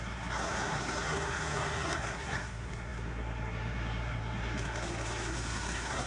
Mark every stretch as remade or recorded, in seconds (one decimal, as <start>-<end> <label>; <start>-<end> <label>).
0.0-6.1 remade